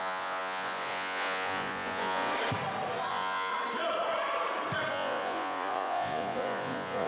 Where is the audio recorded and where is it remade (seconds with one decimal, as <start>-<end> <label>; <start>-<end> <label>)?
0.0-2.3 remade; 2.3-3.1 recorded; 3.1-3.5 remade; 3.5-4.9 recorded; 4.9-7.1 remade

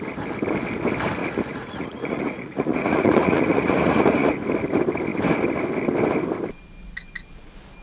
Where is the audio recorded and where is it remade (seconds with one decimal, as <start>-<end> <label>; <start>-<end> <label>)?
0.0-1.2 recorded; 1.2-4.3 remade; 4.3-7.8 recorded

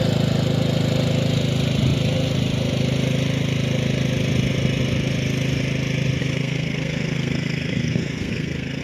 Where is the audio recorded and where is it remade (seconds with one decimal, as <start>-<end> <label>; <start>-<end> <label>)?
0.0-6.2 recorded; 6.2-8.8 remade